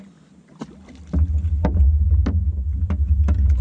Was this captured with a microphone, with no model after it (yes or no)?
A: yes